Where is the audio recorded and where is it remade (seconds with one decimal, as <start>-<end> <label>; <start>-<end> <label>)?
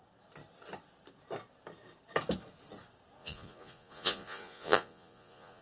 0.0-3.2 recorded; 3.2-5.6 remade